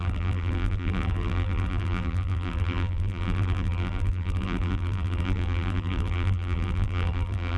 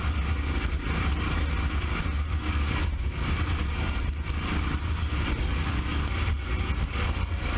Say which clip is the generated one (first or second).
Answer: first